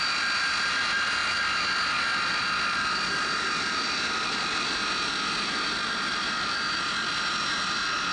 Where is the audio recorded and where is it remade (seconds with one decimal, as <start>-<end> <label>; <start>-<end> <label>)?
0.0-8.1 recorded